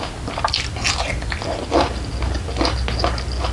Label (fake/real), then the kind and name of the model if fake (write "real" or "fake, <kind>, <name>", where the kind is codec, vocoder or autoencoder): real